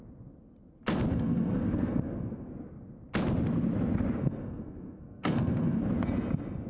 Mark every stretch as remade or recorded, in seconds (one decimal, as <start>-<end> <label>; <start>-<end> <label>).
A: 0.0-1.1 recorded; 1.1-2.5 remade; 2.5-4.2 recorded; 4.2-5.9 remade; 5.9-6.7 recorded